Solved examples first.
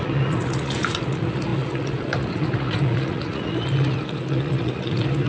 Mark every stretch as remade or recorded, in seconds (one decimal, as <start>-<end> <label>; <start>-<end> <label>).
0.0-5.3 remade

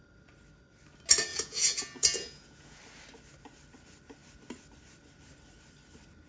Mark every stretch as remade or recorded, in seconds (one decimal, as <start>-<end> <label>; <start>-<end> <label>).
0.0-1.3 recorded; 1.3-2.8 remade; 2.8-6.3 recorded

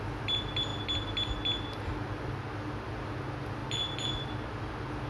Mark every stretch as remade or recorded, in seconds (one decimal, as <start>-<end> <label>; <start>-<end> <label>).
0.0-5.1 recorded

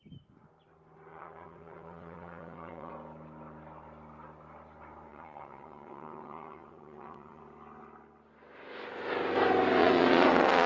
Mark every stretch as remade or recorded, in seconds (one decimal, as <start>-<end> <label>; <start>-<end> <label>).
0.0-1.1 recorded; 1.1-2.9 remade; 2.9-5.1 recorded; 5.1-7.4 remade; 7.4-9.8 recorded; 9.8-10.7 remade

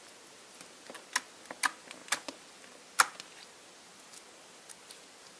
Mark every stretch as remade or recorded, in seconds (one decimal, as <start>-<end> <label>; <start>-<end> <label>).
0.0-5.4 recorded